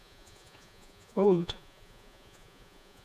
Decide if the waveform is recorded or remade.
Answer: remade